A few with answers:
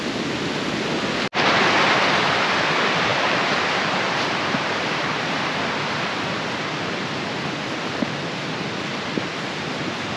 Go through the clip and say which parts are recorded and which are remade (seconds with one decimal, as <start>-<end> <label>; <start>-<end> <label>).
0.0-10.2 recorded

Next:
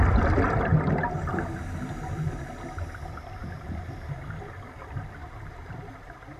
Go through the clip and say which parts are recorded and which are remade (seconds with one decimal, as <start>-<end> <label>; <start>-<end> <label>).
0.0-0.7 remade; 0.7-2.8 recorded; 2.8-3.4 remade; 3.4-4.4 recorded; 4.4-6.4 remade

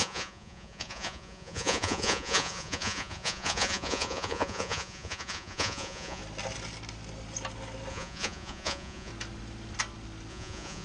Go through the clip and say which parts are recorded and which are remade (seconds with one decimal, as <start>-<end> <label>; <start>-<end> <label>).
0.0-6.2 remade; 6.2-7.9 recorded; 7.9-9.1 remade; 9.1-10.3 recorded; 10.3-10.8 remade

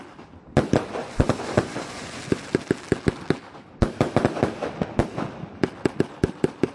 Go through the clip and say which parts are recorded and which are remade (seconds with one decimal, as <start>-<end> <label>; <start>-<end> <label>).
0.0-1.0 recorded; 1.0-2.2 remade; 2.2-6.7 recorded